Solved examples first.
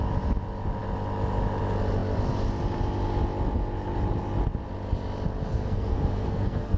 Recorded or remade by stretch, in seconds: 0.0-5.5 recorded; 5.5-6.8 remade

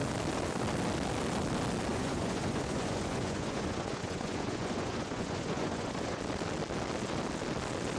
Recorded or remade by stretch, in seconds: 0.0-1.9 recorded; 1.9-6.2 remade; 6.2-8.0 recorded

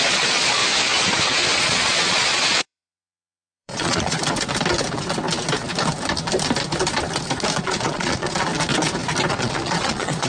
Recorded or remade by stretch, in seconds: 0.0-0.6 remade; 0.6-1.6 recorded; 1.6-4.2 remade; 4.2-7.6 recorded; 7.6-8.5 remade; 8.5-9.3 recorded; 9.3-10.3 remade

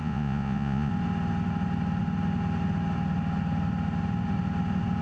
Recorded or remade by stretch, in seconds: 0.0-0.9 remade; 0.9-5.0 recorded

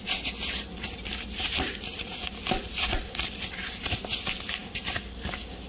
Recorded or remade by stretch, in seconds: 0.0-0.7 recorded; 0.7-4.0 remade; 4.0-5.7 recorded

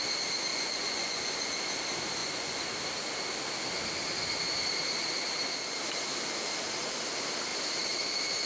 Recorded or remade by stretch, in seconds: 0.0-0.5 recorded; 0.5-1.5 remade; 1.5-2.2 recorded; 2.2-2.7 remade; 2.7-8.5 recorded

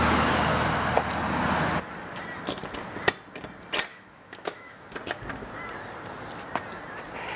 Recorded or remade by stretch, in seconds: 0.0-3.9 recorded; 3.9-4.9 remade; 4.9-7.4 recorded

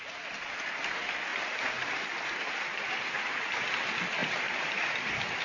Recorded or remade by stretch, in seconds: 0.0-1.3 recorded; 1.3-3.6 remade; 3.6-4.2 recorded; 4.2-5.4 remade